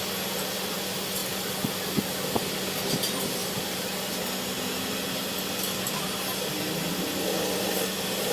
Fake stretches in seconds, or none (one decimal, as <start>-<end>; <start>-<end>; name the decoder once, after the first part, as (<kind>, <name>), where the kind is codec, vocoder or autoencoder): 1.2-2.5 (vocoder, BigVGAN v2); 3.4-4.2